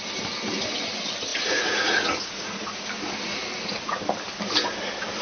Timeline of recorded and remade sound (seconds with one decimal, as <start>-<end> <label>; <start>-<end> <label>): 0.0-1.3 recorded; 1.3-2.9 remade; 2.9-3.3 recorded; 3.3-4.0 remade; 4.0-5.2 recorded